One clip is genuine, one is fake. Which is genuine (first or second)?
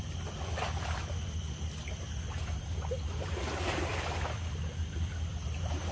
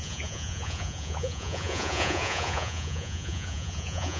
first